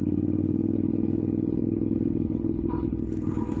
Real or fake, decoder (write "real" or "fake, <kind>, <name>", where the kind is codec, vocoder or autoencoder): fake, codec, HILCodec